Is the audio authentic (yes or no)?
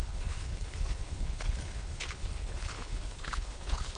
no